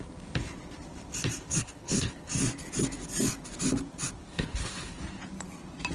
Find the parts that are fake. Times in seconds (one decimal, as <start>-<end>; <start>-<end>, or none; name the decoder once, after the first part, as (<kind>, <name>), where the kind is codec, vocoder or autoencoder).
1.4-2.3 (codec, HILCodec); 4.3-5.0